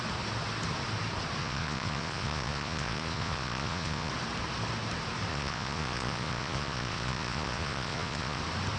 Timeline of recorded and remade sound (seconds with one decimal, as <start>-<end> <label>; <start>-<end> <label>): 0.0-1.4 recorded; 1.4-4.1 remade; 4.1-5.3 recorded; 5.3-8.4 remade; 8.4-8.8 recorded